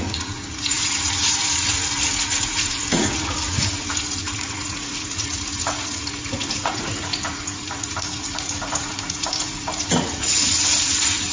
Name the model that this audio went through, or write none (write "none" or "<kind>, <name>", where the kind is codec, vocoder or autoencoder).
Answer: vocoder, Vocos